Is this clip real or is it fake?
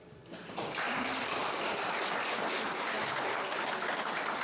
real